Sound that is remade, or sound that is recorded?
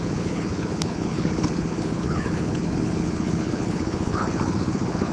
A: remade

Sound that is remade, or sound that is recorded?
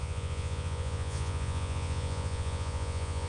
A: remade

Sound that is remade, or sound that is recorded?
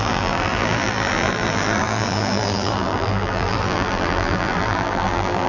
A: remade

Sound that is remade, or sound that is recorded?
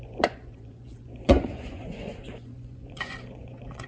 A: remade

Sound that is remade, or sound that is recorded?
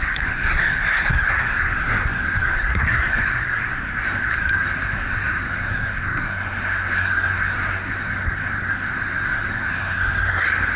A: remade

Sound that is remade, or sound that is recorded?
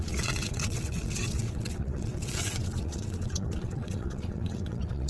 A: remade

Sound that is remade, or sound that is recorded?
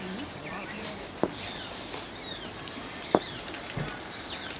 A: recorded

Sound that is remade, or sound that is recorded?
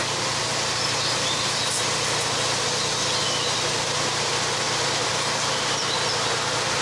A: recorded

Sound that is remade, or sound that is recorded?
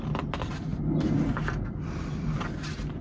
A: recorded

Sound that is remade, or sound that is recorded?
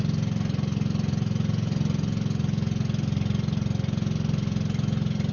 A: recorded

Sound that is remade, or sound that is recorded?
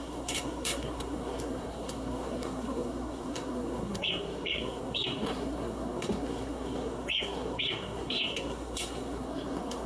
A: remade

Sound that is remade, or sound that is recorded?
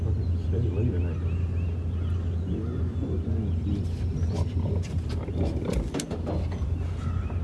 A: recorded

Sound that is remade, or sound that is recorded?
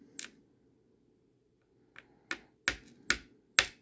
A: recorded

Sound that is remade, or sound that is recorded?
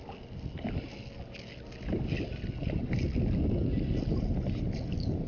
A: recorded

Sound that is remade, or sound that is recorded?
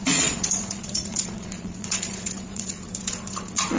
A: remade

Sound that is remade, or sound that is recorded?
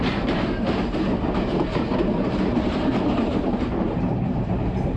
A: remade